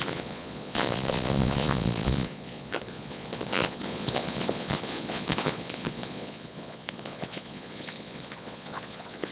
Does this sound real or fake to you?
fake